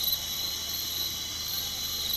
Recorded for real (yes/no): yes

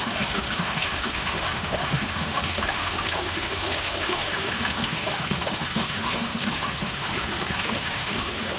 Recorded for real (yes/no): no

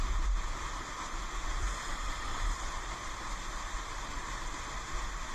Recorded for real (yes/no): yes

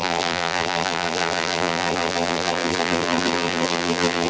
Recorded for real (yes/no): no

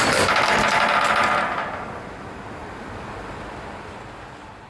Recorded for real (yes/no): yes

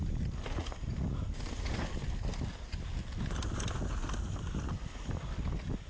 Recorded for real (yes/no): yes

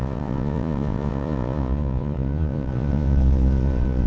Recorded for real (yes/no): no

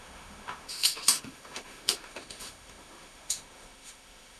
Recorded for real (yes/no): no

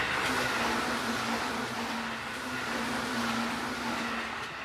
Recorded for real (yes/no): yes